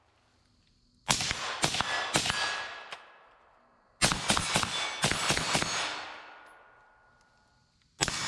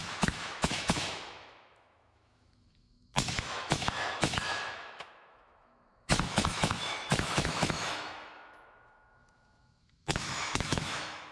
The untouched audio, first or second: first